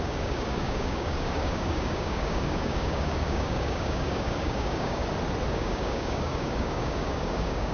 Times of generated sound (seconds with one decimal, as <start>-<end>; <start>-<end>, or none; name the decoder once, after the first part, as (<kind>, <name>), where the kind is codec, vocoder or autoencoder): 0.0-5.0 (codec, DAC); 5.5-7.7